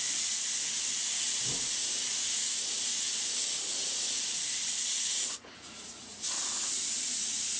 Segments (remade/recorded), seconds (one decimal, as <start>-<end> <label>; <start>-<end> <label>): 0.0-4.6 recorded; 4.6-7.6 remade